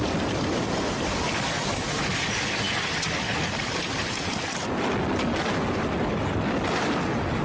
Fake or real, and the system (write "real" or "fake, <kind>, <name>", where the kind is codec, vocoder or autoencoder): real